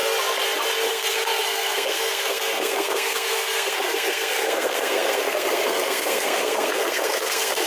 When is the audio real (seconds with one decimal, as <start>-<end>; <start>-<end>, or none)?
0.0-0.9